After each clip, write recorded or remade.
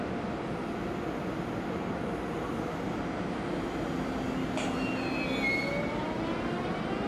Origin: recorded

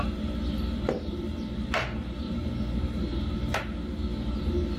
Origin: recorded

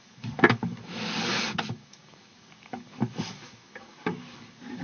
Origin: remade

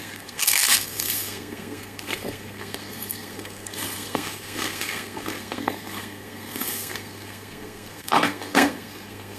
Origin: remade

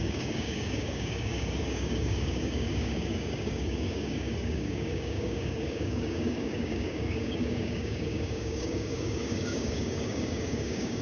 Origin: remade